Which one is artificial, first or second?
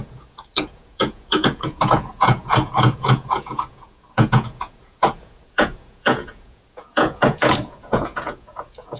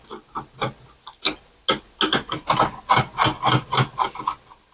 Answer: first